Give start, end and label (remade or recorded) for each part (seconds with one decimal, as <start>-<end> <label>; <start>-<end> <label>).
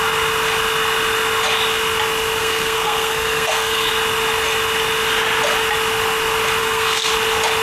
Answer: 0.0-2.4 recorded; 2.4-3.9 remade; 3.9-6.6 recorded; 6.6-7.1 remade; 7.1-7.6 recorded